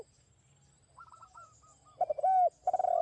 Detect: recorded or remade recorded